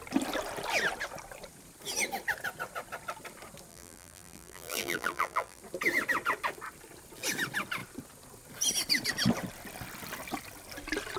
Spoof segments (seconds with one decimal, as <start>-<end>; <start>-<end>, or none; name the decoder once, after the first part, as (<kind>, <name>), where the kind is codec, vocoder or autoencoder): 3.7-5.6 (vocoder, BigVGAN v2)